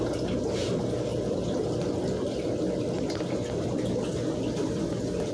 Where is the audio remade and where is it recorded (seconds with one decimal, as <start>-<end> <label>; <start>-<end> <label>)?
0.0-5.3 recorded